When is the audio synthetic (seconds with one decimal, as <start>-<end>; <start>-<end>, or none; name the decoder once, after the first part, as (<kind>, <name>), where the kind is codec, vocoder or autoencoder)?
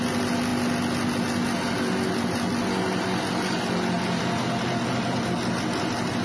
none